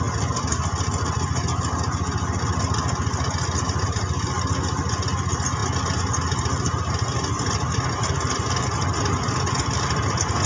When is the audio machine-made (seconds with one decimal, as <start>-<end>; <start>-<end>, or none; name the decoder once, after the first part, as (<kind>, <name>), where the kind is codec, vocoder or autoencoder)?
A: none